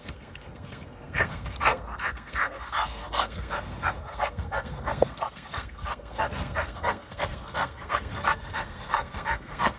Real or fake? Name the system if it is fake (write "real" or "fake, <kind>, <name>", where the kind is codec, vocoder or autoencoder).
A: fake, codec, SNAC